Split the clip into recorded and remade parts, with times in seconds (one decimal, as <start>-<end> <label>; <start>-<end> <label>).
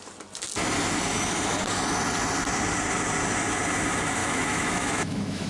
0.0-4.2 recorded; 4.2-5.5 remade